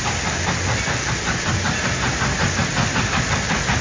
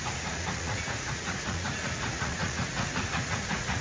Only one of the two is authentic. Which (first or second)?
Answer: first